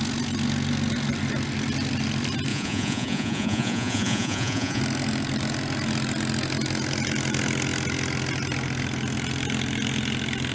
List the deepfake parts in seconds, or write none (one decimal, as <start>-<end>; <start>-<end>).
2.5-4.8